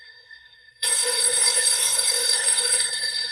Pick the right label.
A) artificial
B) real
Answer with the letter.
A